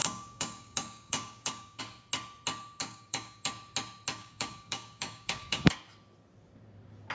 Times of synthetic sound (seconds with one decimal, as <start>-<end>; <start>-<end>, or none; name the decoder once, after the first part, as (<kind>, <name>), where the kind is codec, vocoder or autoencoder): 0.0-1.8 (codec, DAC); 2.8-3.5; 4.2-5.7